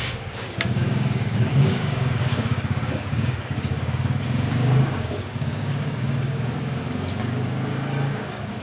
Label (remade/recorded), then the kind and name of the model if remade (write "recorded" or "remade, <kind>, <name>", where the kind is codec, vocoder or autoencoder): remade, codec, DAC